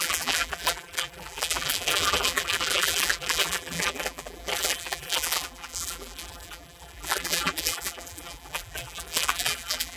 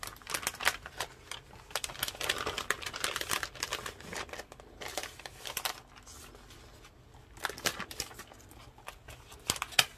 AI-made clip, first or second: first